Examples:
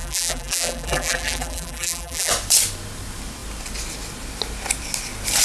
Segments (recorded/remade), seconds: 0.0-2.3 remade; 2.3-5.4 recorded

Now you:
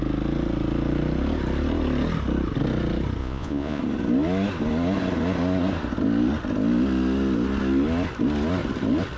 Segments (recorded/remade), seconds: 0.0-3.2 recorded; 3.2-3.8 remade; 3.8-9.2 recorded

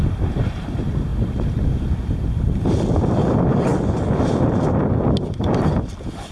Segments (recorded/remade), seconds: 0.0-6.3 recorded

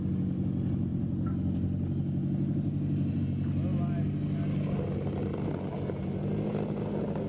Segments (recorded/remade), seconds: 0.0-7.3 recorded

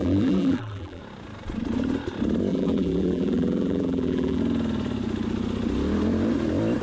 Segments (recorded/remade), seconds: 0.0-1.0 remade; 1.0-2.5 recorded; 2.5-4.4 remade; 4.4-6.8 recorded

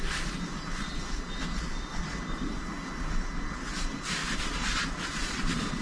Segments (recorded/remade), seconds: 0.0-4.2 recorded; 4.2-5.8 remade

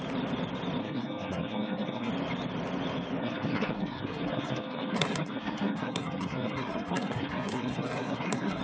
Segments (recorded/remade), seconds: 0.0-0.8 recorded; 0.8-2.1 remade; 2.1-3.2 recorded; 3.2-8.6 remade